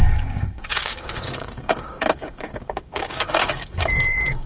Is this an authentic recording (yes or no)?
no